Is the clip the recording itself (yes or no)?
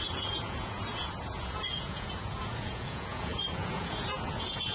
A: no